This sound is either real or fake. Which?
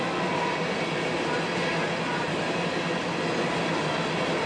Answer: real